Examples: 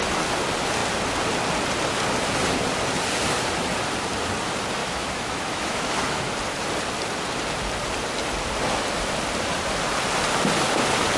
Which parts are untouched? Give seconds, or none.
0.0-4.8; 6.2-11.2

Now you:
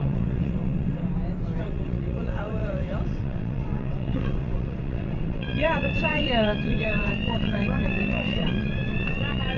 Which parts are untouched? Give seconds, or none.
1.0-1.6

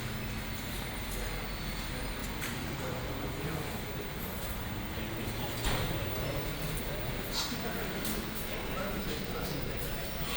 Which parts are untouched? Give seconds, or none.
0.0-8.1; 9.8-10.4

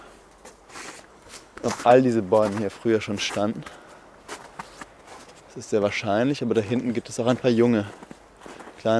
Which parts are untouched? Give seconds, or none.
0.0-1.1; 1.9-9.0

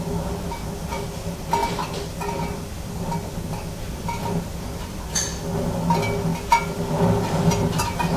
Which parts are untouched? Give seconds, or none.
0.0-8.2